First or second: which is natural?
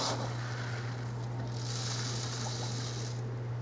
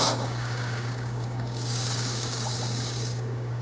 first